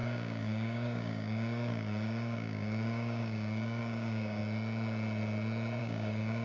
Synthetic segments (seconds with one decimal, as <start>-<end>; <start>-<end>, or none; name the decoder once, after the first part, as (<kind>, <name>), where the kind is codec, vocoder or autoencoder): 0.0-4.4 (codec, DAC); 5.8-6.4